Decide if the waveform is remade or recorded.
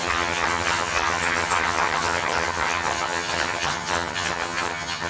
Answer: remade